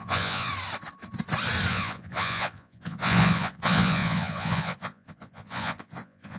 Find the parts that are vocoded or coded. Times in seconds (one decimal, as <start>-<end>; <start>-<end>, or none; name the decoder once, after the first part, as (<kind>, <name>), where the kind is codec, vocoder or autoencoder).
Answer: 0.0-0.5 (vocoder, Vocos); 1.7-6.4

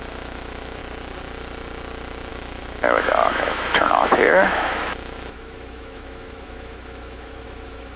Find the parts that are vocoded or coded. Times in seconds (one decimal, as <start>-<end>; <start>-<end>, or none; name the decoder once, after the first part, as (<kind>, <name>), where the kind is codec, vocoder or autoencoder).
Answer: 0.0-0.8 (autoencoder, DAC-VAE); 2.3-8.0